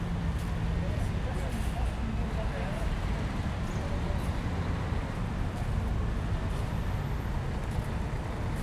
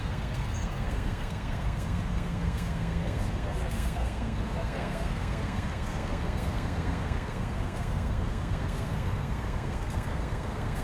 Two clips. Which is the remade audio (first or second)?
second